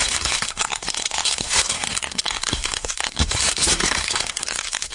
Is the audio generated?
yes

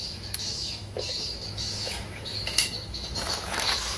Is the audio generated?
yes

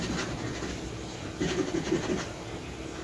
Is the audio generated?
no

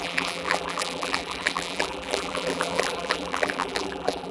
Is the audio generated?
yes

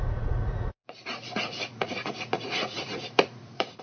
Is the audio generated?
yes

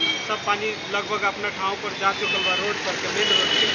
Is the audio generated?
no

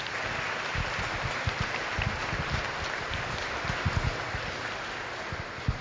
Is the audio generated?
no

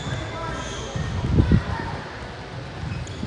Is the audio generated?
no